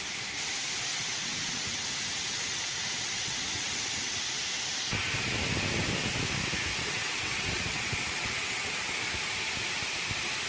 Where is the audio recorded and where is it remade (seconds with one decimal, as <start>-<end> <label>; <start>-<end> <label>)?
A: 0.0-0.9 recorded; 0.9-4.2 remade; 4.2-6.7 recorded; 6.7-9.0 remade; 9.0-10.5 recorded